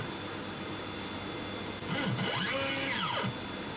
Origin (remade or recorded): recorded